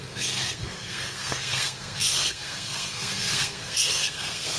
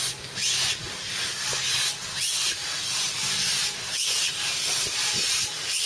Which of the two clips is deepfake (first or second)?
first